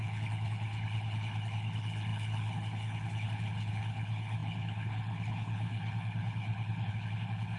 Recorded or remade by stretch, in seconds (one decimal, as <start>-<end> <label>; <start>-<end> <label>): 0.0-7.6 remade

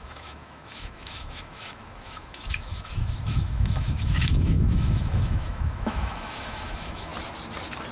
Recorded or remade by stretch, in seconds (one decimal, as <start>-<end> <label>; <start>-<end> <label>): 0.0-7.1 remade; 7.1-7.9 recorded

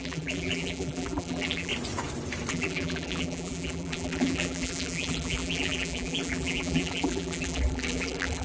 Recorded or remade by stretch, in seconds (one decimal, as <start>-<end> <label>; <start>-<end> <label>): 0.0-1.7 remade; 1.7-2.5 recorded; 2.5-8.4 remade

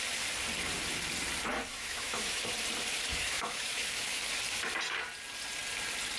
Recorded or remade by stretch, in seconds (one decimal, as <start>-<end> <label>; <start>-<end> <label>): 0.0-1.7 recorded; 1.7-2.4 remade; 2.4-3.1 recorded; 3.1-4.2 remade; 4.2-6.2 recorded

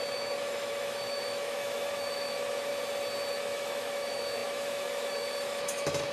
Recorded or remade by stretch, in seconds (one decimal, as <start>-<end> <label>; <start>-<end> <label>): 0.0-2.7 remade; 2.7-3.3 recorded; 3.3-6.1 remade

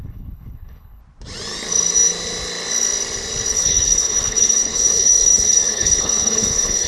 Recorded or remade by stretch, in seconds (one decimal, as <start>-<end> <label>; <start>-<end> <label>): 0.0-1.0 remade; 1.0-3.5 recorded; 3.5-6.9 remade

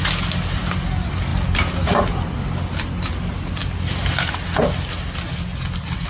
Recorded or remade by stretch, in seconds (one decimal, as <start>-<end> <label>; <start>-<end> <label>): 0.0-6.1 recorded

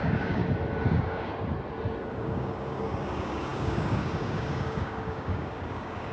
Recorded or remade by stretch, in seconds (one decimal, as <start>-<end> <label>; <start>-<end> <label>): 0.0-0.4 remade; 0.4-0.9 recorded; 0.9-1.3 remade; 1.3-2.1 recorded; 2.1-6.1 remade